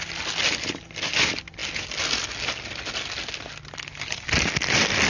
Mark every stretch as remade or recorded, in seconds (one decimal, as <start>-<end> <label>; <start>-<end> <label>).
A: 0.0-5.1 recorded